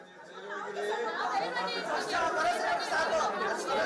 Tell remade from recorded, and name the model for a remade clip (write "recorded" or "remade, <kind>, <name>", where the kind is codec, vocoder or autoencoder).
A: recorded